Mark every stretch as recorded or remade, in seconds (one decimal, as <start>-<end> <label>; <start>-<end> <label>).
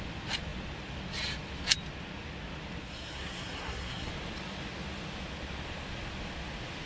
0.0-2.9 recorded; 2.9-4.1 remade; 4.1-6.9 recorded